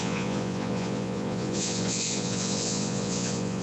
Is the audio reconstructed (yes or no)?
yes